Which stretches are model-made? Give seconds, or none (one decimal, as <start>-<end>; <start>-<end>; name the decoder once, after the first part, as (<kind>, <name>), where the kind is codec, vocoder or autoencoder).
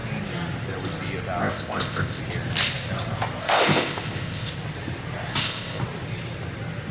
1.4-2.2 (codec, ZipCodec); 3.4-4.5; 5.3-5.8